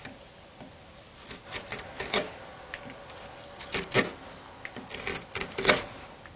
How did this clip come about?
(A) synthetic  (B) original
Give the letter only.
B